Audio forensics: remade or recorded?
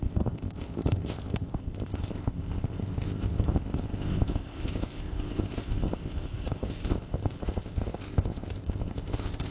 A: remade